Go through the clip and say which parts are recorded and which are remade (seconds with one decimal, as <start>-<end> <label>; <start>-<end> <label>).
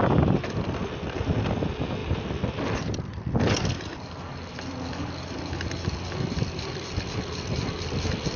0.0-8.4 recorded